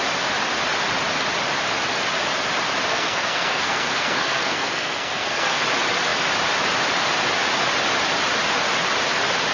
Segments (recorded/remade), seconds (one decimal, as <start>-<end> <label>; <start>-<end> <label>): 0.0-2.9 recorded; 2.9-5.6 remade; 5.6-9.5 recorded